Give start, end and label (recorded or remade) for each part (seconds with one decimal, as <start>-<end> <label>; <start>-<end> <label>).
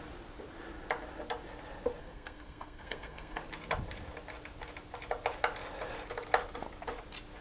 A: 0.0-2.0 recorded; 2.0-3.4 remade; 3.4-7.4 recorded